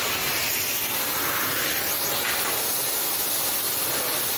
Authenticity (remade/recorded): recorded